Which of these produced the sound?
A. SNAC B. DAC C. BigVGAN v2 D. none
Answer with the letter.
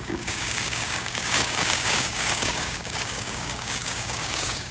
B